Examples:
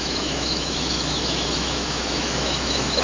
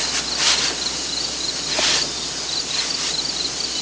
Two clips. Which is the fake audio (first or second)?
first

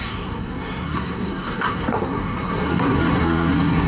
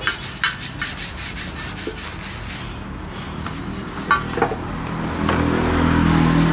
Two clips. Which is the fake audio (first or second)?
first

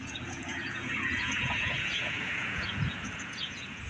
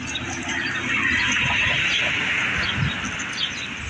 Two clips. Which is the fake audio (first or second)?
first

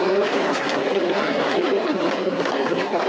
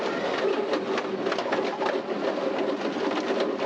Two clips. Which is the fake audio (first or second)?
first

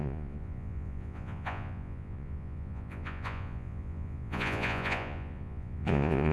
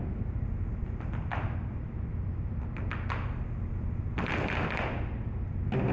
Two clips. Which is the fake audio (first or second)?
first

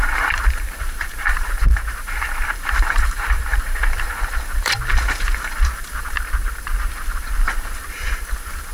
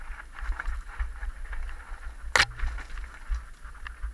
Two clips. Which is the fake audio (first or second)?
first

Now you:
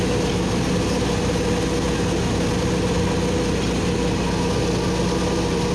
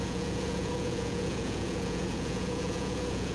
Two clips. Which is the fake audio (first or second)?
second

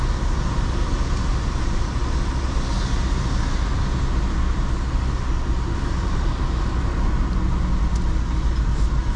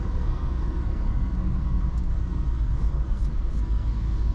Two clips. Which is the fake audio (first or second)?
second